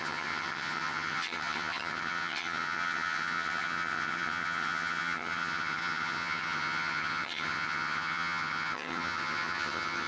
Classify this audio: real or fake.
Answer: fake